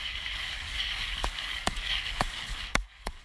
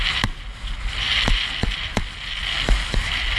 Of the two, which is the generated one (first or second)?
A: first